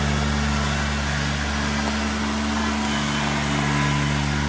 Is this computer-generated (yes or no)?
no